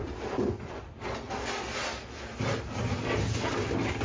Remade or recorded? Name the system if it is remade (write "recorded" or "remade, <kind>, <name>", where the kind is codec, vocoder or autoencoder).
recorded